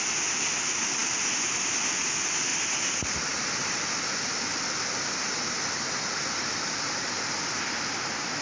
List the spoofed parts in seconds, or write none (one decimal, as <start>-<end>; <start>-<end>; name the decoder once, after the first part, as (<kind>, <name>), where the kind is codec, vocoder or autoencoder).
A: none